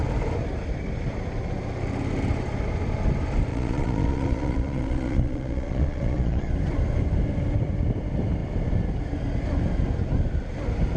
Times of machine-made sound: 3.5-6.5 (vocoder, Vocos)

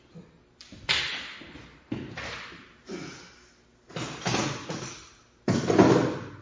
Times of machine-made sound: 4.4-5.2 (vocoder, Vocos)

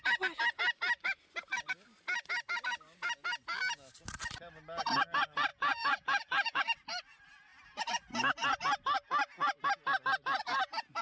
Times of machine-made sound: 5.5-6.6 (vocoder, Vocos)